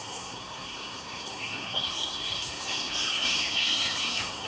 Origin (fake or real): fake